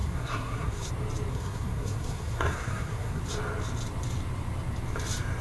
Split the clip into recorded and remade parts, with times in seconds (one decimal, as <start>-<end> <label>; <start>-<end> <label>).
0.0-0.9 remade; 0.9-1.3 recorded; 1.3-3.2 remade; 3.2-5.4 recorded